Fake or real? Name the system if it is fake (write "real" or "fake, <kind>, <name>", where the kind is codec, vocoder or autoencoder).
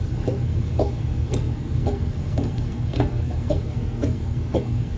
fake, codec, SNAC